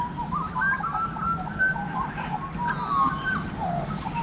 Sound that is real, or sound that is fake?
real